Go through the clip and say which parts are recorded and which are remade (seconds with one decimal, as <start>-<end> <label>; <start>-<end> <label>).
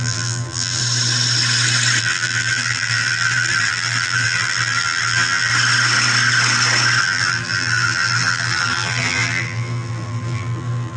0.0-0.8 remade; 0.8-2.0 recorded; 2.0-5.5 remade; 5.5-7.0 recorded; 7.0-11.0 remade